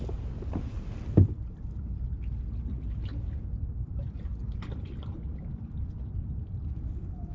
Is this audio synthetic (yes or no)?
no